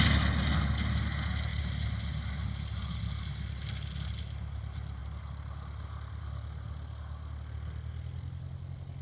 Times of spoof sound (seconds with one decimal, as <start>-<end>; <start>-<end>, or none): 1.5-3.0